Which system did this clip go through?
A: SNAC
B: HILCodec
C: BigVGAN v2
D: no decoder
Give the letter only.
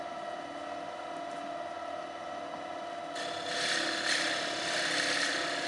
D